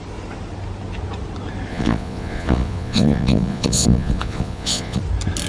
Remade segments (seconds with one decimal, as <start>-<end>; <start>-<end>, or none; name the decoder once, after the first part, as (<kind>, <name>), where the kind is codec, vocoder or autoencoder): 1.7-5.0 (vocoder, Vocos)